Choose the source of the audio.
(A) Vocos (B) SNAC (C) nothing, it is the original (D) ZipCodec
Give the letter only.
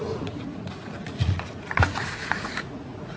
A